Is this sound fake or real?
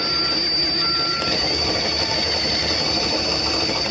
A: real